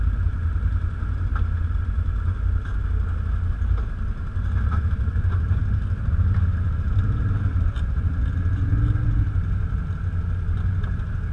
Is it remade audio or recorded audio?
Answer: recorded